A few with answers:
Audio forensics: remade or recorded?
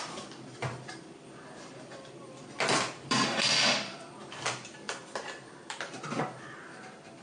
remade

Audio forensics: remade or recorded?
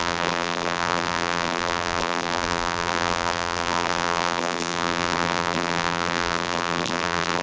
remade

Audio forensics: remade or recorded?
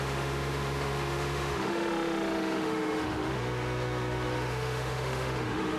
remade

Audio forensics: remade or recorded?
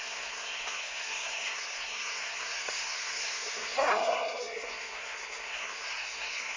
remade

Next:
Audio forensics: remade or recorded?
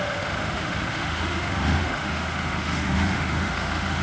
remade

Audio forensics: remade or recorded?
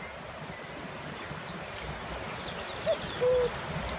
remade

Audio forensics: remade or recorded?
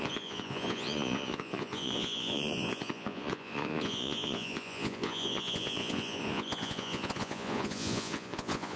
remade